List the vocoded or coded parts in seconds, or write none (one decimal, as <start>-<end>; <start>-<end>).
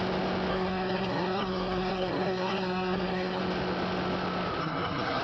0.5-3.4; 4.6-5.2